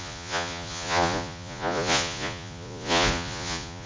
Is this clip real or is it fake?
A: fake